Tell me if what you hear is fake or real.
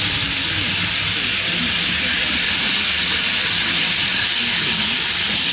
fake